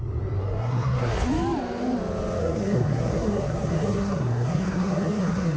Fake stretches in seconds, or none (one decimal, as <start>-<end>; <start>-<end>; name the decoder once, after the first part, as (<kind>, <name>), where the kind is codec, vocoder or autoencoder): 0.4-1.3 (codec, SNAC); 2.4-5.6